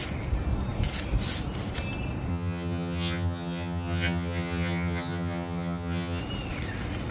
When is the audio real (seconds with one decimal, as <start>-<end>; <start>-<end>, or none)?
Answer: 0.0-2.3; 6.2-7.1